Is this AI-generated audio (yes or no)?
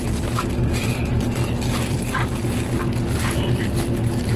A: no